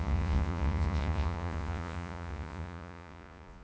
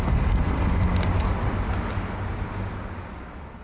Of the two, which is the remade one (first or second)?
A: first